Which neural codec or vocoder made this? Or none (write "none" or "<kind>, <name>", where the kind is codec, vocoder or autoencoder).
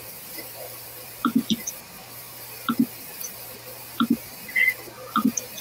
vocoder, BigVGAN v2